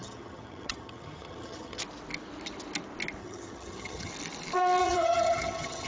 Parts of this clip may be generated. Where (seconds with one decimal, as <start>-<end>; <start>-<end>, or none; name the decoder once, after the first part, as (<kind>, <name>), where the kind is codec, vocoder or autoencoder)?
0.0-1.8 (vocoder, HiFi-GAN); 3.2-4.1; 4.8-5.9